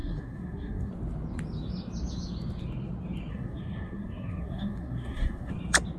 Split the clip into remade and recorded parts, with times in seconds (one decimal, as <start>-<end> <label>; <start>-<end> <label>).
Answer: 0.0-0.9 remade; 0.9-3.3 recorded; 3.3-5.5 remade; 5.5-6.0 recorded